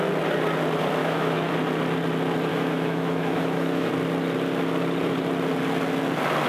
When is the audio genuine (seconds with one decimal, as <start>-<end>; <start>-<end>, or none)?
0.0-1.0; 1.5-2.5; 3.9-6.5